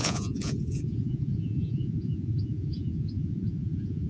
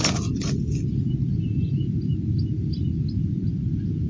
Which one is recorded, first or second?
second